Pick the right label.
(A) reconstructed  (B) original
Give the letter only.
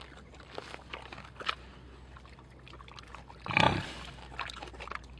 B